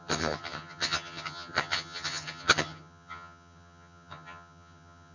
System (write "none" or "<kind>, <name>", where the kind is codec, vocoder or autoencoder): vocoder, HiFi-GAN